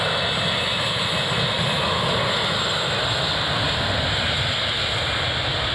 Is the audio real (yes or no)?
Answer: yes